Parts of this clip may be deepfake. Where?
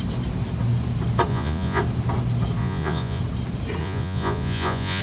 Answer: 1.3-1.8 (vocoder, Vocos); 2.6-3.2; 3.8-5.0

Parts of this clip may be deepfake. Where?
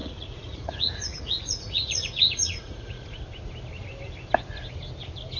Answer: 0.0-3.2 (vocoder, Vocos)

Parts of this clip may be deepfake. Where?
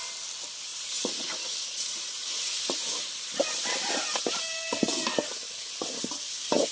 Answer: 0.7-2.8 (vocoder, Vocos)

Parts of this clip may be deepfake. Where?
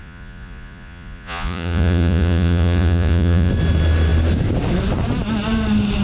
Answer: 0.0-3.5 (vocoder, Vocos)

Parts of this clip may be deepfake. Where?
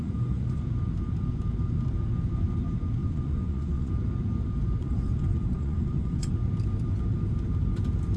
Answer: 0.0-0.6 (vocoder, Vocos); 3.0-3.9; 4.8-6.3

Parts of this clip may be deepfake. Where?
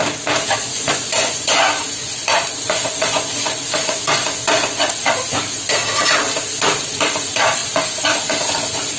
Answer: 0.7-4.9 (vocoder, Vocos); 7.6-8.2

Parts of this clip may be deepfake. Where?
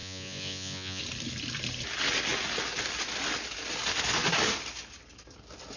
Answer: 0.0-1.0 (vocoder, Vocos)